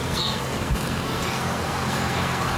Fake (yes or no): yes